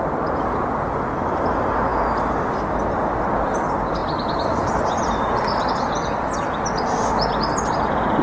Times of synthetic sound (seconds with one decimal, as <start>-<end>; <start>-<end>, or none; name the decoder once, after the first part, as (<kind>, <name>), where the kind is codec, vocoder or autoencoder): none